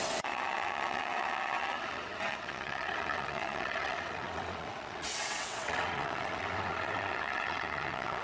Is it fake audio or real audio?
fake